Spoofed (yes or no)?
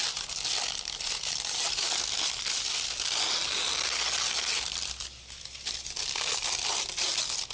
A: no